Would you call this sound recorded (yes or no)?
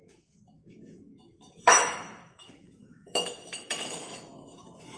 no